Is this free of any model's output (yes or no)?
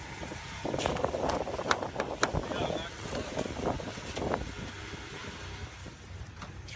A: yes